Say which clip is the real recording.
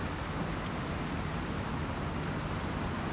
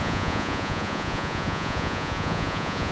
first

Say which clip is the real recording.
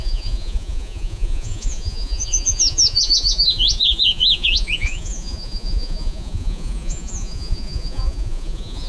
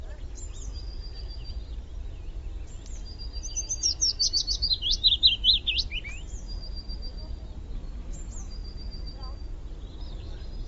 second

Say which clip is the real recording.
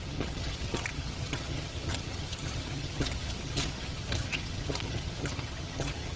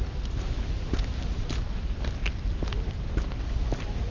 second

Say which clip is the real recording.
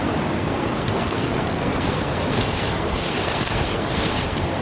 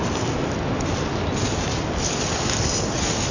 second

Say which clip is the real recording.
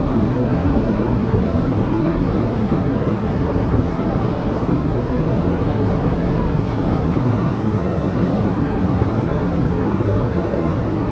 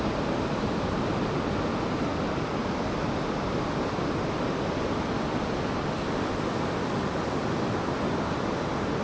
second